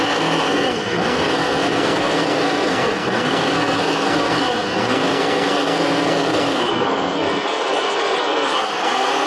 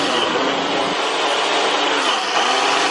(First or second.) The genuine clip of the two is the second